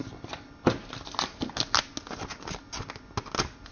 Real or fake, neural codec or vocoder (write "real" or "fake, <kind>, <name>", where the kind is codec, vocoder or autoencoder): real